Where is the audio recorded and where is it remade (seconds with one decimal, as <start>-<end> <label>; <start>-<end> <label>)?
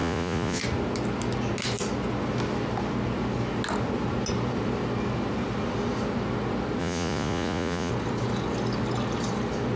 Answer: 0.0-0.6 remade; 0.6-6.8 recorded; 6.8-7.9 remade; 7.9-9.8 recorded